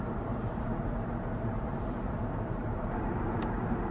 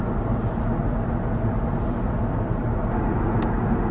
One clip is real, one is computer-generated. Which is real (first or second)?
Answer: second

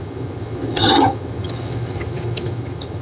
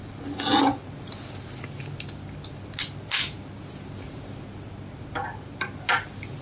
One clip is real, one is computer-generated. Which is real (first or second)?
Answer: second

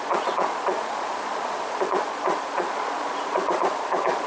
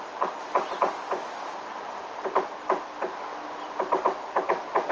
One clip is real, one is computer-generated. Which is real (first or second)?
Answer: second